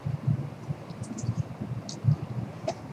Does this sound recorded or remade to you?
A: recorded